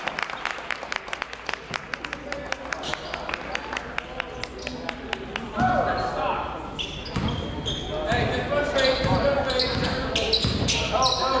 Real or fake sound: real